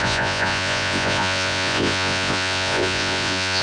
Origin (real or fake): fake